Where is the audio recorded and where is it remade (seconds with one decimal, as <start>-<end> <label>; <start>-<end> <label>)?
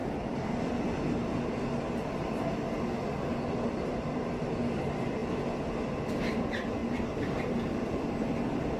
0.0-3.5 recorded; 3.5-5.2 remade; 5.2-6.2 recorded; 6.2-8.8 remade